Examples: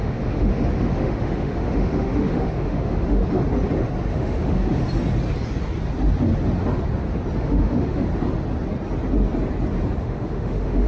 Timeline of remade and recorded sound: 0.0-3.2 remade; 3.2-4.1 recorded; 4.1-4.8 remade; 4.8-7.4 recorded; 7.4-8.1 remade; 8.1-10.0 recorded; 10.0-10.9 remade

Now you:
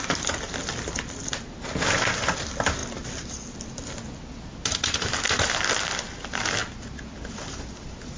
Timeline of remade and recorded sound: 0.0-8.2 recorded

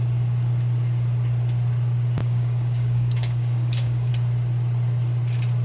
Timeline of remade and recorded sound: 0.0-2.2 recorded; 2.2-4.1 remade; 4.1-5.6 recorded

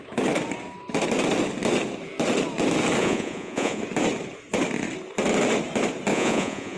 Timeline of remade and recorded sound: 0.0-3.0 recorded; 3.0-3.8 remade; 3.8-6.1 recorded; 6.1-6.8 remade

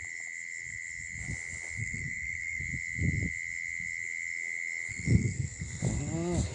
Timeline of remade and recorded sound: 0.0-1.8 recorded; 1.8-2.6 remade; 2.6-4.9 recorded; 4.9-5.8 remade; 5.8-6.5 recorded

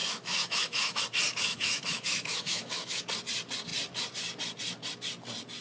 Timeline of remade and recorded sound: 0.0-1.0 remade; 1.0-1.5 recorded; 1.5-3.0 remade; 3.0-5.6 recorded

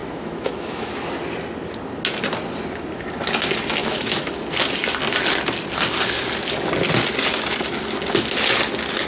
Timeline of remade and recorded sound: 0.0-0.9 remade; 0.9-3.8 recorded; 3.8-4.3 remade; 4.3-9.1 recorded

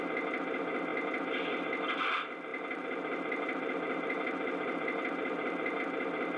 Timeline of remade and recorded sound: 0.0-2.5 recorded; 2.5-5.8 remade; 5.8-6.4 recorded